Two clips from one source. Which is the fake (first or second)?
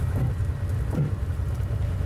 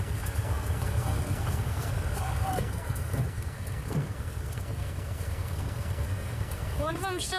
second